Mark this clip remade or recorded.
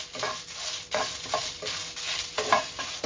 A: recorded